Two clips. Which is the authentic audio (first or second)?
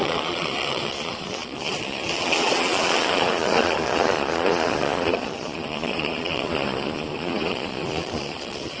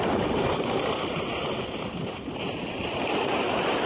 second